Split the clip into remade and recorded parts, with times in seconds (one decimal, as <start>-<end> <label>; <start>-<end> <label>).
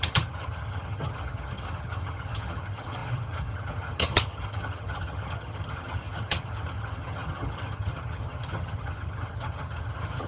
0.0-10.3 remade